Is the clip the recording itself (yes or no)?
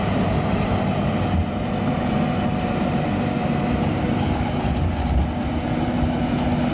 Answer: yes